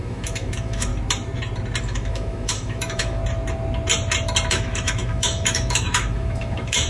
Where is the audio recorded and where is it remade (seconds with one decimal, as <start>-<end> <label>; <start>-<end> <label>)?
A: 0.0-0.9 remade; 0.9-1.8 recorded; 1.8-3.2 remade; 3.2-4.5 recorded; 4.5-6.9 remade